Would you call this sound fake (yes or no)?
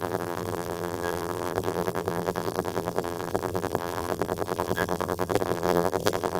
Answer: yes